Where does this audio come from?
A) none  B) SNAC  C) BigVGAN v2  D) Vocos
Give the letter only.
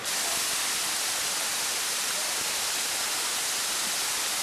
A